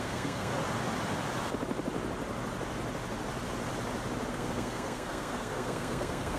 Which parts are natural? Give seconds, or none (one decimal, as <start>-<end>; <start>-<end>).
0.5-4.3